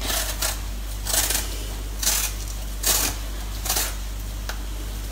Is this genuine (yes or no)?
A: yes